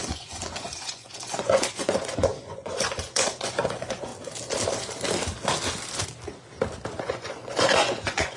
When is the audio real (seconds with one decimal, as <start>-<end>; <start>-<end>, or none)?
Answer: 4.1-7.0